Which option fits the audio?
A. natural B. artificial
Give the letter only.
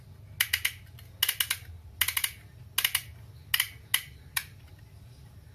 A